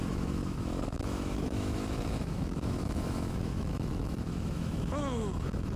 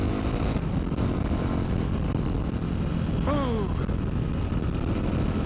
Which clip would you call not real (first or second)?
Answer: first